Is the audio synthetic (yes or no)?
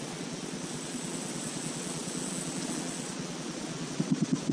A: yes